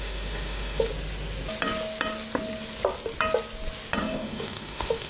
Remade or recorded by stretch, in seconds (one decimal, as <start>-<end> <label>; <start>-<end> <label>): 0.0-0.9 remade; 0.9-4.0 recorded; 4.0-5.1 remade